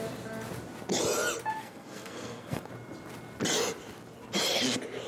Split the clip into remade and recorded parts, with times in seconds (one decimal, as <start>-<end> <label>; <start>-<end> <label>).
0.0-1.6 recorded; 1.6-2.7 remade; 2.7-5.1 recorded